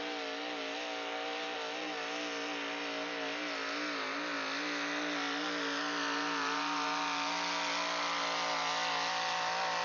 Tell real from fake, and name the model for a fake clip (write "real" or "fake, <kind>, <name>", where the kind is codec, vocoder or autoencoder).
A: real